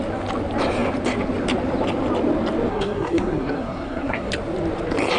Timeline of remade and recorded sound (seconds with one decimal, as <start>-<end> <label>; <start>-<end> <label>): 0.0-2.7 recorded; 2.7-4.3 remade; 4.3-5.2 recorded